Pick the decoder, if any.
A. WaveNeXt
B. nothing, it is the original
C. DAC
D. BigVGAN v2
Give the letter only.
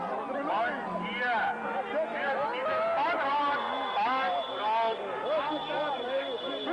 B